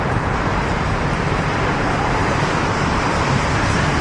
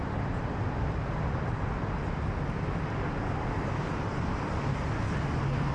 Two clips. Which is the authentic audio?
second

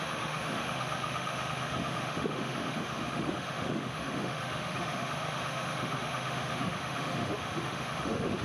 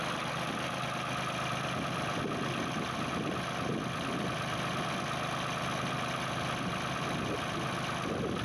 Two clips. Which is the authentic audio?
second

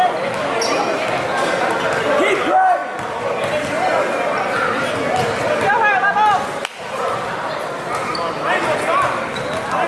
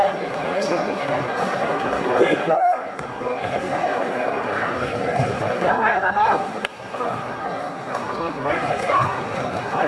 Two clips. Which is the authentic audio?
first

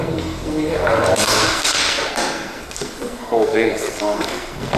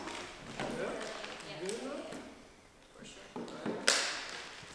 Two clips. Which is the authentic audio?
second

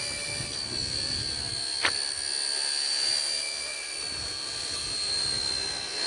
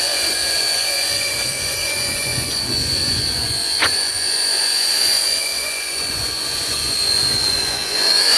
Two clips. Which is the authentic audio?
first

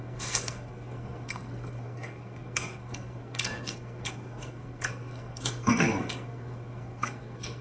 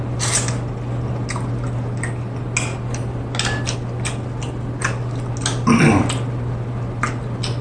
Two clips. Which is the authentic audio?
second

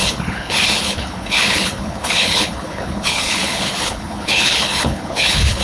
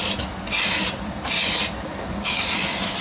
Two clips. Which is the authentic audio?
second